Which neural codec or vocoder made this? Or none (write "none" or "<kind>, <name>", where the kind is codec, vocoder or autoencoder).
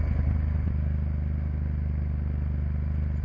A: none